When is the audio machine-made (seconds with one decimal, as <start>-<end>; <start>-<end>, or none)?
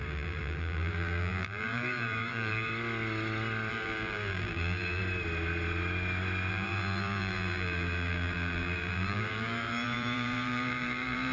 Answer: 0.0-2.7; 3.7-5.0; 6.5-11.3